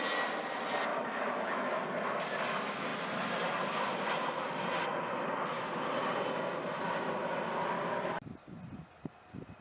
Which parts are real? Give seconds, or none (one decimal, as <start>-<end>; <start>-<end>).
0.0-0.9; 1.8-9.6